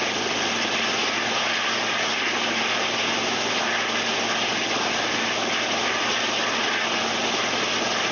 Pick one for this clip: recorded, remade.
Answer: recorded